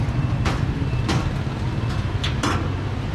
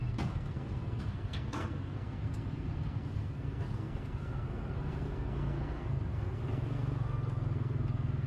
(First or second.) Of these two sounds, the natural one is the first